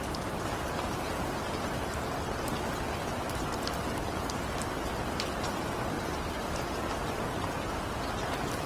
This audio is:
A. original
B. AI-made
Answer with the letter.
A